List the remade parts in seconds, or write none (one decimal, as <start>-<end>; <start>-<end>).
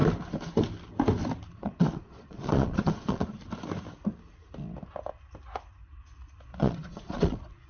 1.5-3.4; 6.6-7.7